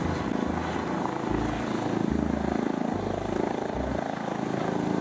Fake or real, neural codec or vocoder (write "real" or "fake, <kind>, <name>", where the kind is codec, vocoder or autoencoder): real